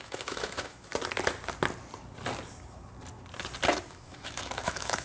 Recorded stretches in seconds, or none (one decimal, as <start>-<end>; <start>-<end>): 0.9-3.9